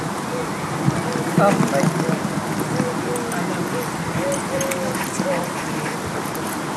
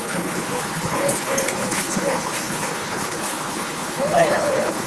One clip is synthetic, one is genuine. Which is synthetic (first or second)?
second